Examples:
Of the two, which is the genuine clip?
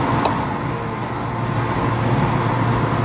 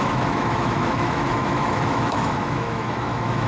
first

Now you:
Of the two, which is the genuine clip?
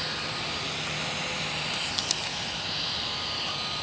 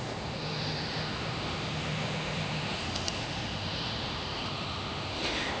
first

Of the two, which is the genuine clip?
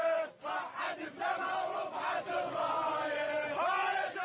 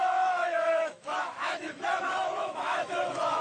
first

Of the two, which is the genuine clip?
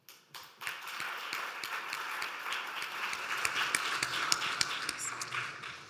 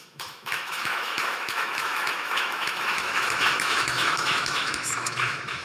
first